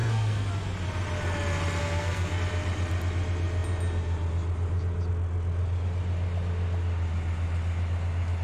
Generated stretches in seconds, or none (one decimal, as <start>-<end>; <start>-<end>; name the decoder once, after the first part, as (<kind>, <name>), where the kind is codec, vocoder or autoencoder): 0.0-0.5 (codec, SNAC); 1.8-2.4